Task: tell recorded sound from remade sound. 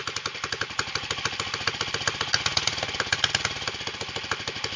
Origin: recorded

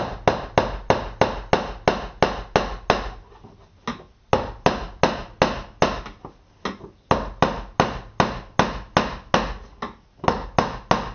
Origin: recorded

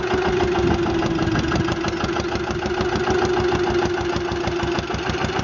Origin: recorded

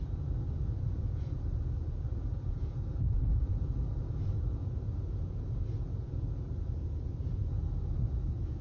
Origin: remade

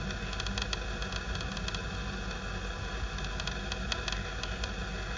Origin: recorded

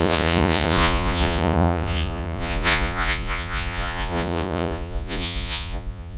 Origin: remade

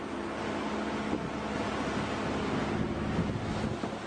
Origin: recorded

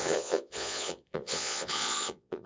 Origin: remade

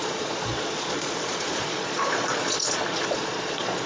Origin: remade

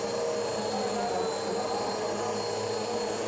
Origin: recorded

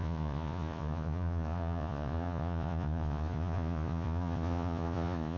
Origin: remade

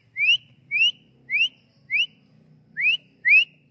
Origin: recorded